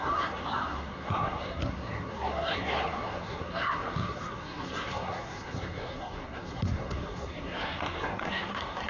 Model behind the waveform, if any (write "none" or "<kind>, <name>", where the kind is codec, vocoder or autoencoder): codec, SNAC